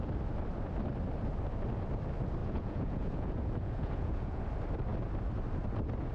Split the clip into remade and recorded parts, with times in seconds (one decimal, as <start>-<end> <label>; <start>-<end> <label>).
0.0-2.4 recorded; 2.4-4.4 remade; 4.4-6.1 recorded